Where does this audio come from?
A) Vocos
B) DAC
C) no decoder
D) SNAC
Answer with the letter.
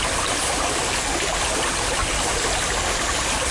C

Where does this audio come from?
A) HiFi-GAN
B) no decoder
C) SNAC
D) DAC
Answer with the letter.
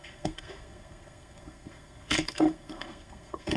C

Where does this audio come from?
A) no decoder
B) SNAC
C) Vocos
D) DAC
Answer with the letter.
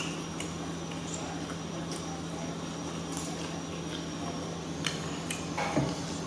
A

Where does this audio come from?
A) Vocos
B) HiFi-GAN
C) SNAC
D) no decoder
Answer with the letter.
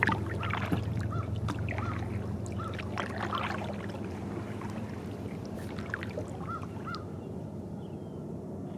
D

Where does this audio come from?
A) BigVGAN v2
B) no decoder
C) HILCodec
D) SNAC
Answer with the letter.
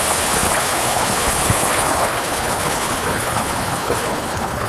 C